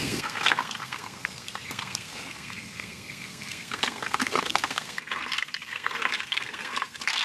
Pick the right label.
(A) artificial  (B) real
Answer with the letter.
A